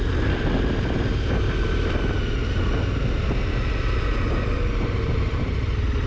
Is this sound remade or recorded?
recorded